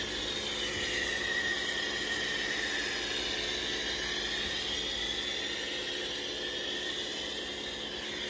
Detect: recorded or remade recorded